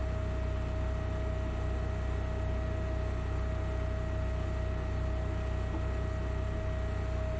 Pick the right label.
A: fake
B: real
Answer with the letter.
B